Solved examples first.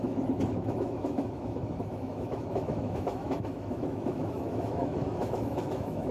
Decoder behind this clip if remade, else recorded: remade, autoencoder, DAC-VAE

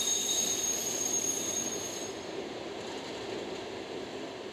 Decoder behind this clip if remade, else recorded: recorded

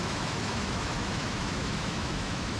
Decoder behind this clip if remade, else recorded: remade, autoencoder, DAC-VAE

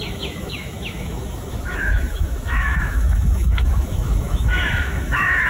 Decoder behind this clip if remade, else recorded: remade, autoencoder, DAC-VAE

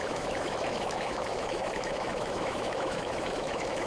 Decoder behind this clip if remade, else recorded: remade, autoencoder, DAC-VAE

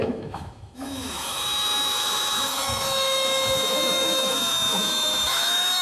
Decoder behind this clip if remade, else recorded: remade, autoencoder, DAC-VAE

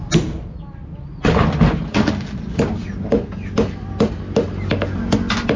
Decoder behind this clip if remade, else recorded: recorded